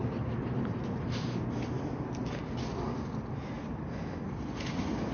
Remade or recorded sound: recorded